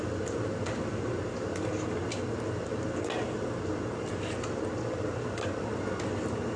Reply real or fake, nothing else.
real